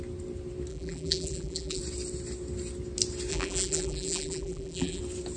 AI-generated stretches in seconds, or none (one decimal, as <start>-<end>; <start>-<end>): 0.7-1.8; 3.3-5.0